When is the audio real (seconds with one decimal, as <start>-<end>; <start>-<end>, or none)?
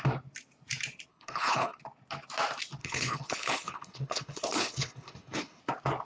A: 0.0-1.1; 1.8-2.8; 5.6-6.0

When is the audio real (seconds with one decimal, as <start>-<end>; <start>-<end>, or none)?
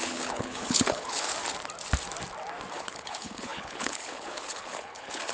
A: 1.3-2.7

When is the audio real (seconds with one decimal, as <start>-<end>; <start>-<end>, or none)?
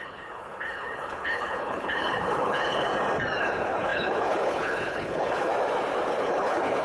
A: 2.9-3.4; 5.5-6.2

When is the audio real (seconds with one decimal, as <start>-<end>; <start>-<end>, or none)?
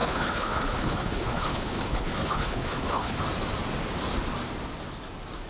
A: 3.2-5.5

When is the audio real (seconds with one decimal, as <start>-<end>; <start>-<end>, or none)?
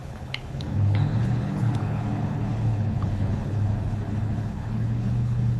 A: none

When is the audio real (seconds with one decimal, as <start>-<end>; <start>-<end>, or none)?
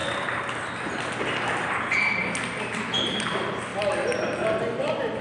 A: 0.0-5.2